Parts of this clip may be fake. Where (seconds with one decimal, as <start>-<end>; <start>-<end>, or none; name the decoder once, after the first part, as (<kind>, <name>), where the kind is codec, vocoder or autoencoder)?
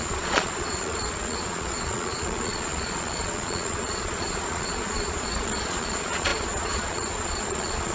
0.0-7.9 (vocoder, Vocos)